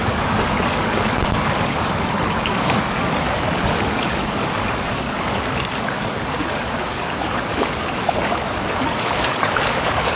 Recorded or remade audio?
remade